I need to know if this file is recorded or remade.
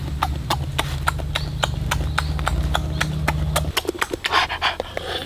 recorded